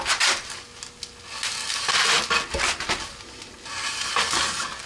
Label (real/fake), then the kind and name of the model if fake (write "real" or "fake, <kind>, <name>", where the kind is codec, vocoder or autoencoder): real